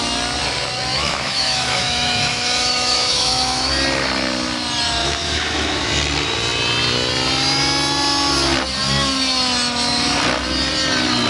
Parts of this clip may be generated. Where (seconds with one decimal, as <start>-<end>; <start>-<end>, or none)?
0.9-3.7; 5.0-5.9